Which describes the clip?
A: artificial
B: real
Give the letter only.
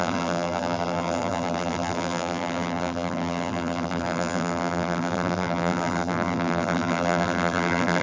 A